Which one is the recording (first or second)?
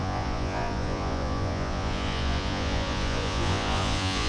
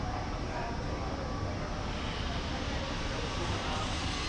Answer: second